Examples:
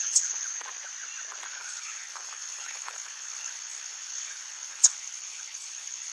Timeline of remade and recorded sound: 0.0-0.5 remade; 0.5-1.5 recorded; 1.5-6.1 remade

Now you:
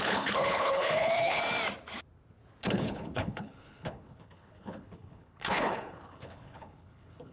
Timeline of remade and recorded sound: 0.0-1.4 remade; 1.4-2.7 recorded; 2.7-7.3 remade

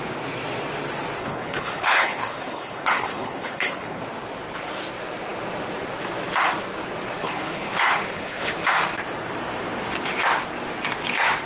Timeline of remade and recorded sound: 0.0-1.2 recorded; 1.2-4.0 remade; 4.0-7.2 recorded; 7.2-8.5 remade; 8.5-11.5 recorded